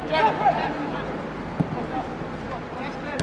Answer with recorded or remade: remade